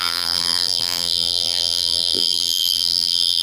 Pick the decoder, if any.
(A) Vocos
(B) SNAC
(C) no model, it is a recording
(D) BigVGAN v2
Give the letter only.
D